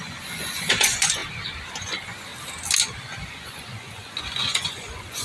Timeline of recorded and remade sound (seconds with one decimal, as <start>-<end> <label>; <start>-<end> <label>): 0.0-1.2 remade; 1.2-1.8 recorded; 1.8-2.3 remade; 2.3-3.0 recorded; 3.0-5.2 remade